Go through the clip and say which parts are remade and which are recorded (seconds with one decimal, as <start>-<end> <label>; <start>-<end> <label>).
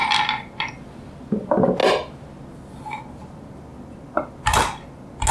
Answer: 0.0-5.3 recorded